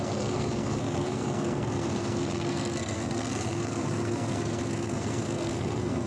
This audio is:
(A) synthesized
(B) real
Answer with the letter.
A